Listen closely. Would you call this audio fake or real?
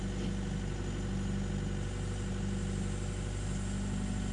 real